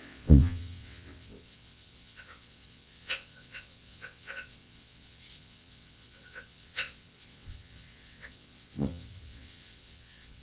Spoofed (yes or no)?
yes